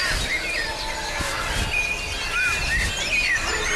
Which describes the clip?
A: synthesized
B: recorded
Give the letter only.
B